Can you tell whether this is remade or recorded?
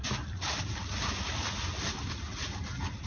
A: recorded